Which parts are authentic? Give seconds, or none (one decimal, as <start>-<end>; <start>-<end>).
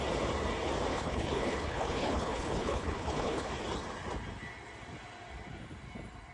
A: 0.0-0.9; 3.5-6.3